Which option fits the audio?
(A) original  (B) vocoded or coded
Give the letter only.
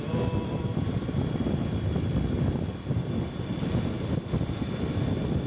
A